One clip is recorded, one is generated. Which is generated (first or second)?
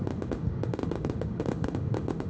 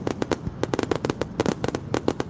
first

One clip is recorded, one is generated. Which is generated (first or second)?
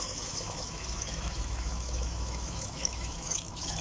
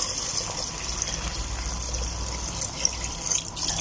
first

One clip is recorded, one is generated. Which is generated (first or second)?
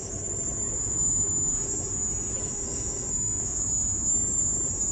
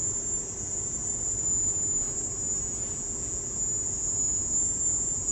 first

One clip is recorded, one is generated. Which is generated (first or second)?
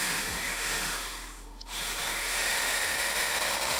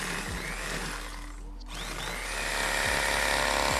first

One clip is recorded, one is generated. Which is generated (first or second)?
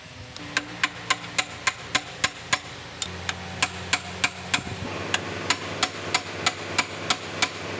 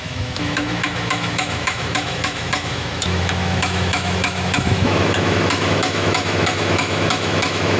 second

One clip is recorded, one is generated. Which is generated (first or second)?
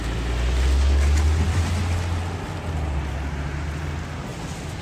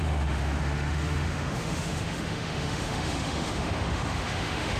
second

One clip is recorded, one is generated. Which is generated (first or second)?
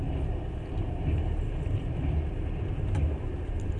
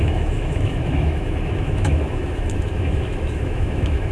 second